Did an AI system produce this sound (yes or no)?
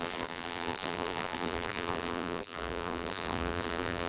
yes